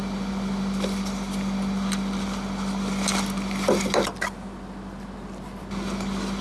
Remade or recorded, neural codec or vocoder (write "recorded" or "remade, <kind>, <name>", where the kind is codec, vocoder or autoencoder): recorded